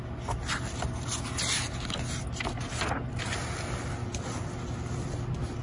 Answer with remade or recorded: recorded